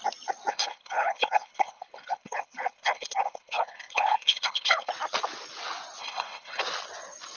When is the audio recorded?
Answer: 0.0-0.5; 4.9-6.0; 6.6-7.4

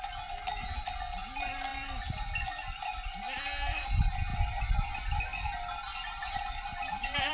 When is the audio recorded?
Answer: 0.0-6.2

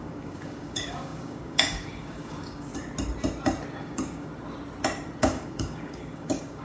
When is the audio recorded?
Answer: 2.7-3.8; 4.3-5.2

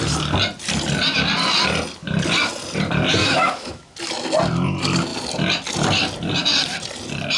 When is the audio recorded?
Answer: 0.0-3.2; 3.9-7.4